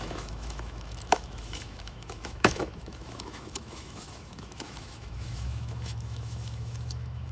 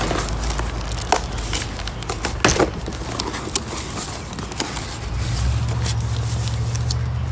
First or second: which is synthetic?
first